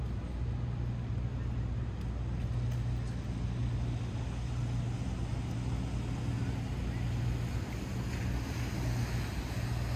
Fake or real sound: real